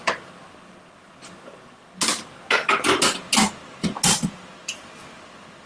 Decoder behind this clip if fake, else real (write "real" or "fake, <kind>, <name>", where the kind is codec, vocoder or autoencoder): real